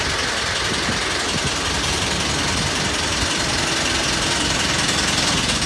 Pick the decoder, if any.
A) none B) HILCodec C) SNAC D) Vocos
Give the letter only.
A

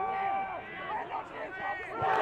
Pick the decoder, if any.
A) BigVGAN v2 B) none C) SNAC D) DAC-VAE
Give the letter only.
B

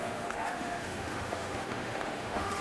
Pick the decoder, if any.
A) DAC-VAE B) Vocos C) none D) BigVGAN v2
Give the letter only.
A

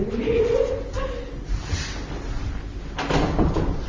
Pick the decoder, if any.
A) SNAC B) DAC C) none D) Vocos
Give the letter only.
C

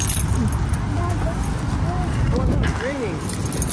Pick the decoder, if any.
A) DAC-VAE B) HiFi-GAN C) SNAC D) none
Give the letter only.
D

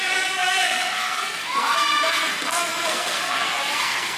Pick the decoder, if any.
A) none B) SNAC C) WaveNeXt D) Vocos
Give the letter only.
B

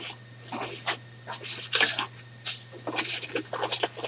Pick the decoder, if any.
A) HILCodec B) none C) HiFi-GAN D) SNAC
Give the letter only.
B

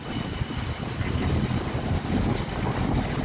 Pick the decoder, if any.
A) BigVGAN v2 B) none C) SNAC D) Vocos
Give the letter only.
B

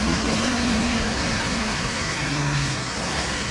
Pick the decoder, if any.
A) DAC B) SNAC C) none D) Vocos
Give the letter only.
B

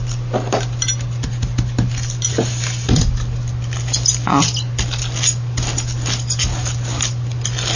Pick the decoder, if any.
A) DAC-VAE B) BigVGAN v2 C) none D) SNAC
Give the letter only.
C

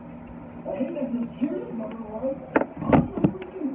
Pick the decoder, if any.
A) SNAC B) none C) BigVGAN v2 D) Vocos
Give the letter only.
B